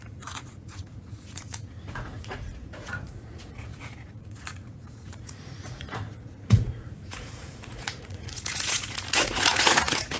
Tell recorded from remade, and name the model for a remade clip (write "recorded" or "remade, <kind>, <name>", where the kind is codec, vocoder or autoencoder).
remade, vocoder, Vocos